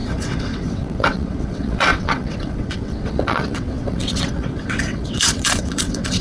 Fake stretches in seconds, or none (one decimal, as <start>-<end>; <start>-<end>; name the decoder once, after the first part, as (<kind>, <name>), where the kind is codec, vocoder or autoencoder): 0.0-6.2 (vocoder, WaveNeXt)